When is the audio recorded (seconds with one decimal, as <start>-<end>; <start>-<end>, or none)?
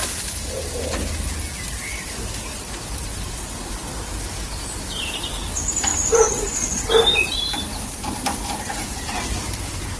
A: 0.9-5.9; 9.6-10.0